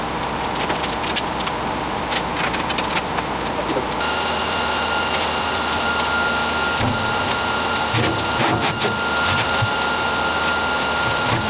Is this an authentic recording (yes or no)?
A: yes